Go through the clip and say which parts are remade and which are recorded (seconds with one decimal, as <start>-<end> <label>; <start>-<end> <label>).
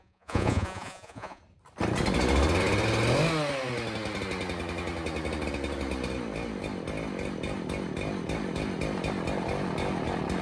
0.0-1.4 remade; 1.4-10.4 recorded